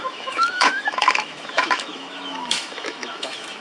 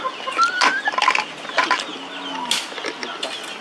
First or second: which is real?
second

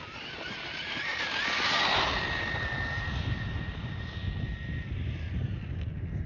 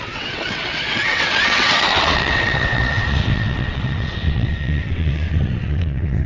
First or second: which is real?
first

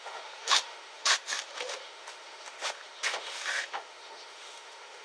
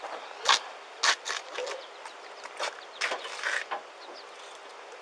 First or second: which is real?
second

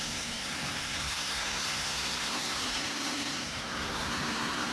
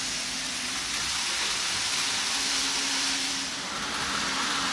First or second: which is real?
second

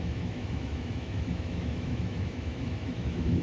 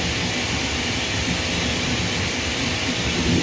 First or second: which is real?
second